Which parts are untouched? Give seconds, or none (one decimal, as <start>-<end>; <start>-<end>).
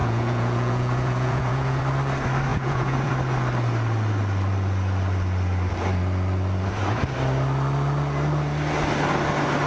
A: 1.8-2.5; 3.1-9.7